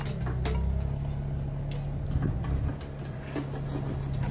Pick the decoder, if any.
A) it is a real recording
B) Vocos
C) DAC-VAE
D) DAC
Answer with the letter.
A